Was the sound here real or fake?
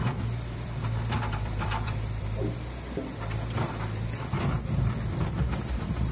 fake